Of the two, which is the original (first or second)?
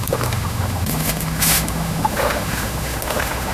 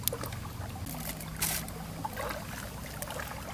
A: second